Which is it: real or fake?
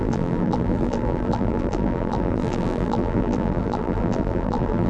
fake